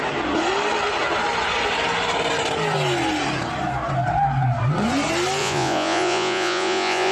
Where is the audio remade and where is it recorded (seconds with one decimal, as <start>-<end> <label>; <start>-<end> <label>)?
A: 0.0-5.4 recorded; 5.4-7.1 remade